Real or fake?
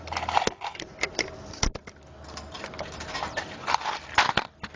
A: real